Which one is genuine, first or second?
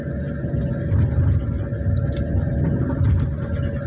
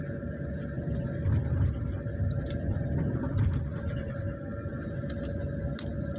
first